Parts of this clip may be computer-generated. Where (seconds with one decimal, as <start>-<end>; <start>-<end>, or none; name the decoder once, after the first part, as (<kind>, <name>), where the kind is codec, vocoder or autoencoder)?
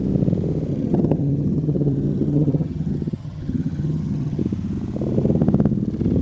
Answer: 0.7-4.4 (vocoder, HiFi-GAN)